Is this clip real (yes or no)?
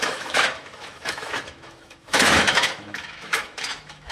no